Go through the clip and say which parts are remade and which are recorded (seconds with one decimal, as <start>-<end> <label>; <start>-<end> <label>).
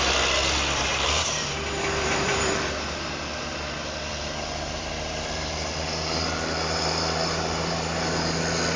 0.0-0.9 recorded; 0.9-2.5 remade; 2.5-4.1 recorded; 4.1-8.4 remade; 8.4-8.8 recorded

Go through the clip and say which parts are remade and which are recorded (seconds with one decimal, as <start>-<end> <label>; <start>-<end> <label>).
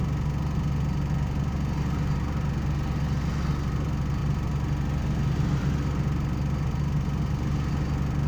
0.0-8.3 recorded